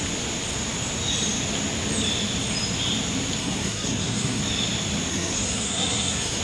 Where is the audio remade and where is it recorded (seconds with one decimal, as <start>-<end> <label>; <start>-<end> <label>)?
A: 0.0-3.4 recorded; 3.4-4.4 remade; 4.4-5.1 recorded; 5.1-6.4 remade